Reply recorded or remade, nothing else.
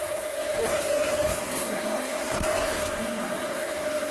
remade